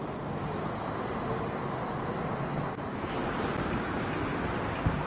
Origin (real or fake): real